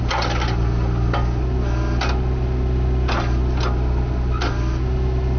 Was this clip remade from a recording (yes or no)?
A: no